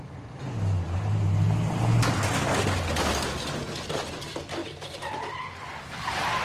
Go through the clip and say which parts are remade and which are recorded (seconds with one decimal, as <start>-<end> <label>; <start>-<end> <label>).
0.0-6.4 recorded